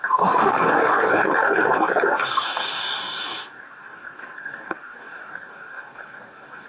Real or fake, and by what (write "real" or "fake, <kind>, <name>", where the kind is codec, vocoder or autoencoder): fake, codec, DAC